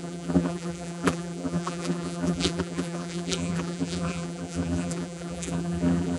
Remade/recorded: remade